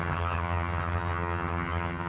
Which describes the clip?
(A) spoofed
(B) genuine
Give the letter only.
A